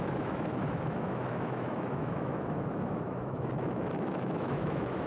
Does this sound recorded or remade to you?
remade